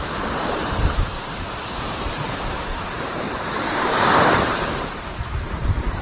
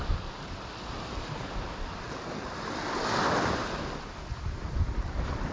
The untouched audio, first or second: second